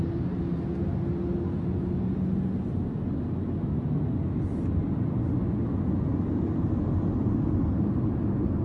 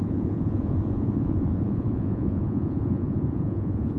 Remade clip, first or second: second